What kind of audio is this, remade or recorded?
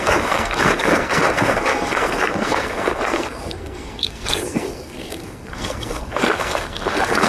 remade